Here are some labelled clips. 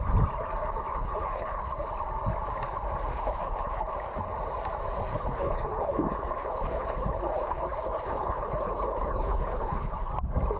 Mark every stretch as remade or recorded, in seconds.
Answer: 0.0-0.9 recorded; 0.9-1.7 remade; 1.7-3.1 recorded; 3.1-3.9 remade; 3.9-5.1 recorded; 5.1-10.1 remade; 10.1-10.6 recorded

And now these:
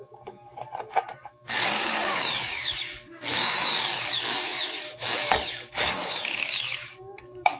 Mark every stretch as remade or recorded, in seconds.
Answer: 0.0-7.6 remade